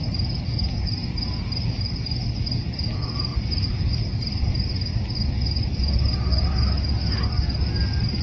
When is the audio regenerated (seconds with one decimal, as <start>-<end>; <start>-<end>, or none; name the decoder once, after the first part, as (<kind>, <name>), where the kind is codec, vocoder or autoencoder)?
3.3-3.9 (vocoder, BigVGAN v2)